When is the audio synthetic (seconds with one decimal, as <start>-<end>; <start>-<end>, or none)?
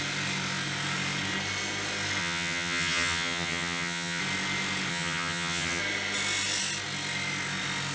2.2-4.2; 4.9-5.8